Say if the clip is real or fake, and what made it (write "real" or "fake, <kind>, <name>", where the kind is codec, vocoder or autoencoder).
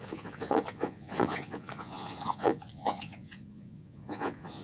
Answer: fake, vocoder, Vocos